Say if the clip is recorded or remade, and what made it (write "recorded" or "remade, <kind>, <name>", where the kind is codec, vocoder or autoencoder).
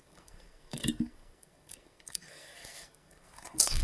remade, codec, SNAC